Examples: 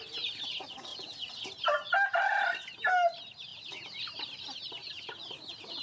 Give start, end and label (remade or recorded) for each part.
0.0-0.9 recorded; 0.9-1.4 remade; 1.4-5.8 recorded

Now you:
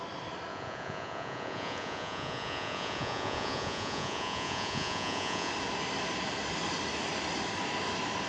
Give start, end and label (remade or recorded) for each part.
0.0-0.5 recorded; 0.5-5.5 remade; 5.5-8.3 recorded

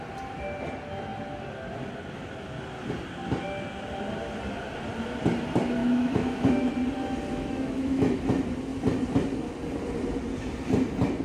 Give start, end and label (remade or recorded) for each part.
0.0-5.8 recorded; 5.8-6.7 remade; 6.7-7.3 recorded; 7.3-8.2 remade; 8.2-11.2 recorded